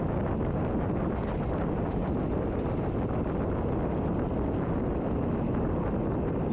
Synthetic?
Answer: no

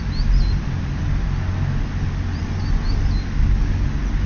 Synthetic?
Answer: no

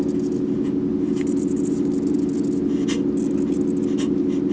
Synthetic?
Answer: no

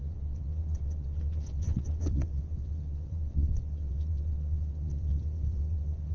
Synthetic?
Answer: yes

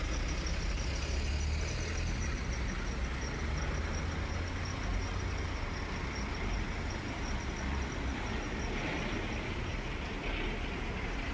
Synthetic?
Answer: no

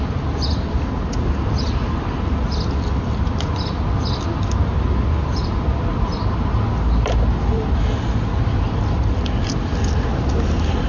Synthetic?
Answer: no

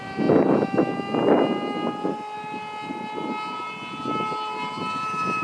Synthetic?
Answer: no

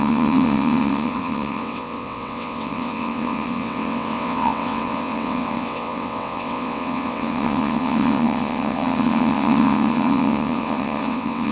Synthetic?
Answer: yes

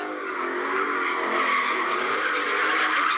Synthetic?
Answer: no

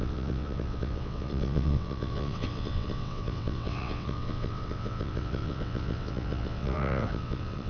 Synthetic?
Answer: yes